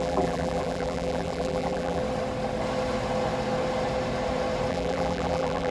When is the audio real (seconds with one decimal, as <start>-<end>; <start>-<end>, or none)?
2.0-4.7